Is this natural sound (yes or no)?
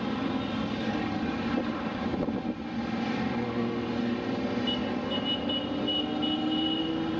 yes